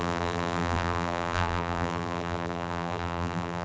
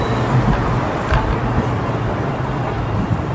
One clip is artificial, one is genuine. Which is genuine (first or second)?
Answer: second